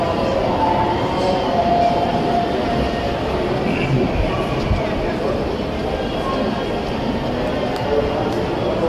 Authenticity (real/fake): real